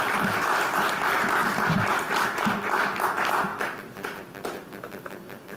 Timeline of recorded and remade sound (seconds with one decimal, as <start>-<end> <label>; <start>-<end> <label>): 0.0-1.4 recorded; 1.4-2.1 remade; 2.1-3.5 recorded; 3.5-5.6 remade